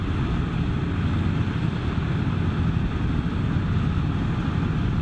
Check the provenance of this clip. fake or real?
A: real